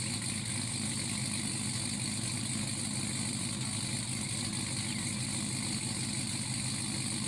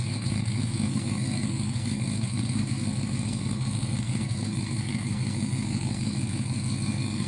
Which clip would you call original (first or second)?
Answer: first